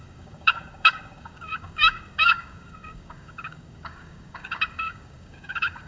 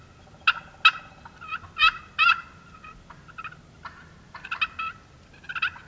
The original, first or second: second